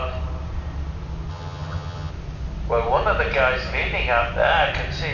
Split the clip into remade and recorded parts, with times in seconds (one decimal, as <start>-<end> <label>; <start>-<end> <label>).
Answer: 0.0-1.3 recorded; 1.3-2.1 remade; 2.1-5.1 recorded